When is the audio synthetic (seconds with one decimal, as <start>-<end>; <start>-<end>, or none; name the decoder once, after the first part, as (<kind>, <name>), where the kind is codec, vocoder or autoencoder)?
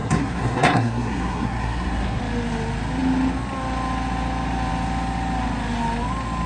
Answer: 0.0-2.2 (codec, SNAC)